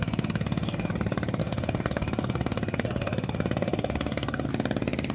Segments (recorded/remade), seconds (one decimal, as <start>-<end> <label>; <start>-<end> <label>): 0.0-0.9 remade; 0.9-1.4 recorded; 1.4-4.5 remade; 4.5-5.1 recorded